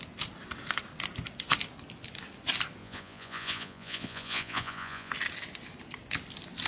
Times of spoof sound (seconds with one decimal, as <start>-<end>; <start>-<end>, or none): 2.8-5.1